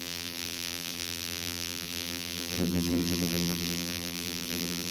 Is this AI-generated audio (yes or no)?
yes